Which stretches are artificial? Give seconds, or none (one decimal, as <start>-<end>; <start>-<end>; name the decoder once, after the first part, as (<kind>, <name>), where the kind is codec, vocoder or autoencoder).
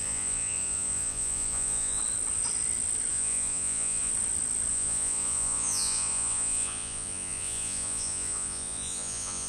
0.0-2.0 (vocoder, Vocos); 3.1-4.1; 4.7-9.5